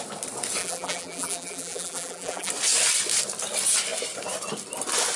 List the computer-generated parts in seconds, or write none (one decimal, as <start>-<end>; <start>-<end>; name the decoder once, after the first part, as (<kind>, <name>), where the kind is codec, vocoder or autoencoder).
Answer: 0.6-2.5 (vocoder, BigVGAN v2)